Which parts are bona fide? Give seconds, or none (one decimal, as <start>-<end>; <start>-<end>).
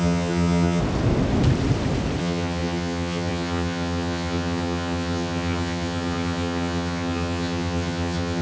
0.8-2.2